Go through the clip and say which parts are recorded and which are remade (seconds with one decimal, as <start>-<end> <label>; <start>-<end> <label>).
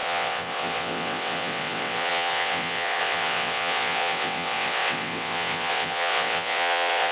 0.0-7.1 remade